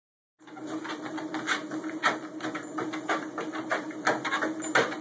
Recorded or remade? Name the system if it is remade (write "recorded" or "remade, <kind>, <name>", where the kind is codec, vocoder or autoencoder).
recorded